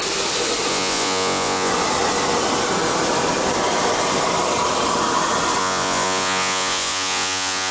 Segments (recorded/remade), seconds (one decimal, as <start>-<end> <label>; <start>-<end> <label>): 0.0-0.7 recorded; 0.7-1.7 remade; 1.7-5.6 recorded; 5.6-7.7 remade